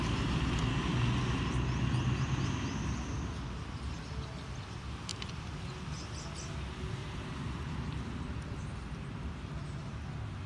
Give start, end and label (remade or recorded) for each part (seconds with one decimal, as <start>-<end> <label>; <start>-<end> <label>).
0.0-0.9 recorded; 0.9-1.5 remade; 1.5-7.0 recorded; 7.0-9.5 remade; 9.5-10.5 recorded